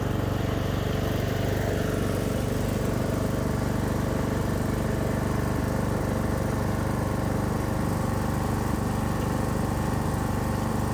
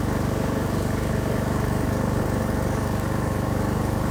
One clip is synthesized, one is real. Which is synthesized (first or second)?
second